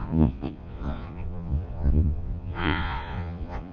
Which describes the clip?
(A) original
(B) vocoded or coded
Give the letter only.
B